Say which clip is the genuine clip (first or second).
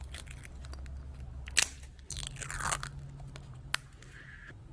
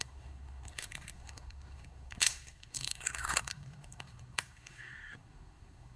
first